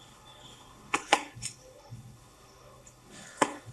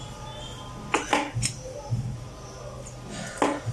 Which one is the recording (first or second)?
second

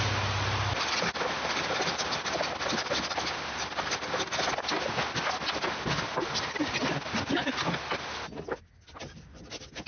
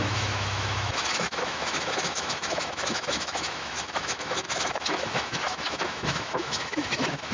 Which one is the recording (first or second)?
first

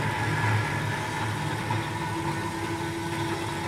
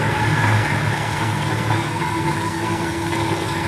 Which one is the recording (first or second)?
first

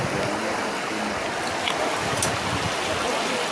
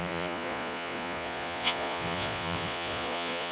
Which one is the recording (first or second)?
first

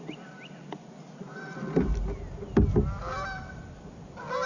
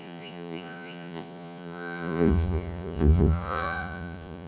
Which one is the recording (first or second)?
first